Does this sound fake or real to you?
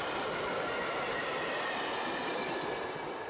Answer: real